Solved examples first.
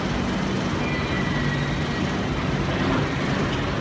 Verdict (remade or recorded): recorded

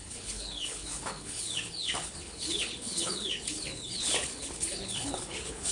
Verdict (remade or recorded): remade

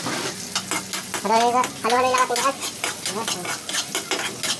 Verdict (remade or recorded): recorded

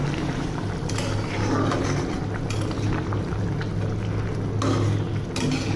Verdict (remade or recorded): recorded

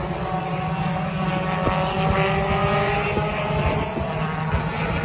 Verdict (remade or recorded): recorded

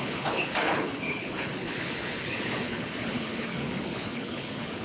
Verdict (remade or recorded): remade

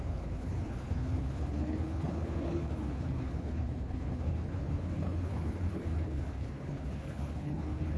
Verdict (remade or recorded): remade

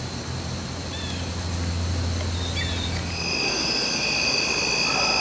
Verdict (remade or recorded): recorded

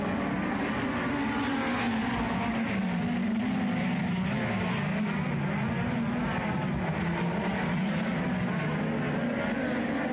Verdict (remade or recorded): recorded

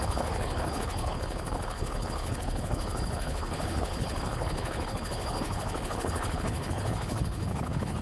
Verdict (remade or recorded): remade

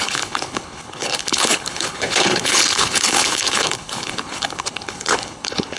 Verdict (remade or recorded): remade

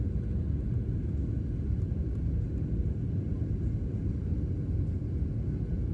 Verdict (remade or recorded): recorded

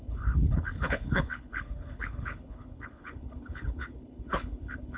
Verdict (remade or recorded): remade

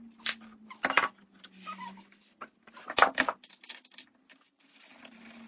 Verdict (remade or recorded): recorded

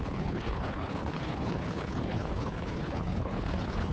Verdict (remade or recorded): remade